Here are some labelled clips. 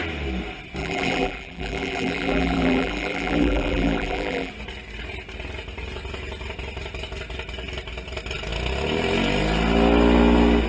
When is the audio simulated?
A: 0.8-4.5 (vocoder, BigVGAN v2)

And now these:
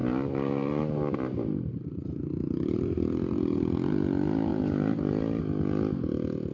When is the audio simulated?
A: 0.0-3.9 (vocoder, BigVGAN v2); 4.5-5.4

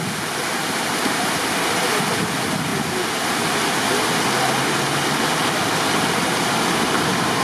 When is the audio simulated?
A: 0.6-1.4 (vocoder, BigVGAN v2)

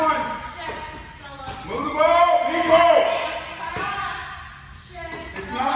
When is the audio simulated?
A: none